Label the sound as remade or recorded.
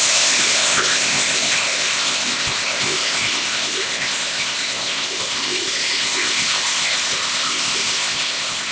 remade